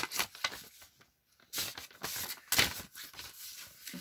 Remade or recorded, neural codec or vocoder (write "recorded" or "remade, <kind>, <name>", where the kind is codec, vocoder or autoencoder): recorded